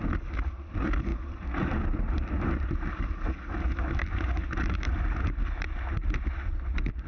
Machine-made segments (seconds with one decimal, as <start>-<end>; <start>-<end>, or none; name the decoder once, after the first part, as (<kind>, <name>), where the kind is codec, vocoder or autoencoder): none